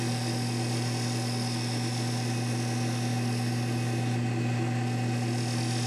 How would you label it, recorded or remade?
recorded